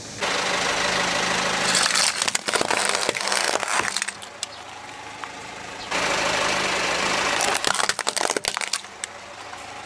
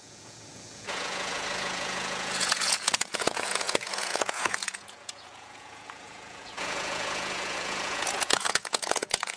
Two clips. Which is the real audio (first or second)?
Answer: first